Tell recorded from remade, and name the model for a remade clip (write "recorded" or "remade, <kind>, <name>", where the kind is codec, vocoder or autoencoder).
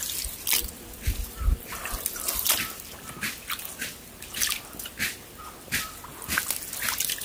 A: recorded